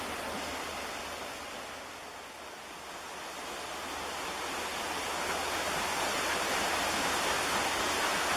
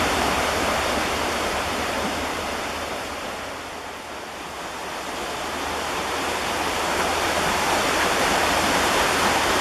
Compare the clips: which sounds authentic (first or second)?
first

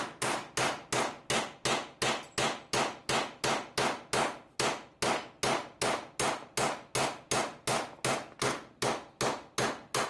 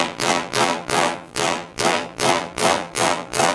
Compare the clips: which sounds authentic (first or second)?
first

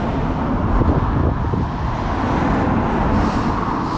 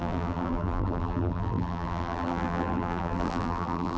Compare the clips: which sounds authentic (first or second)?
first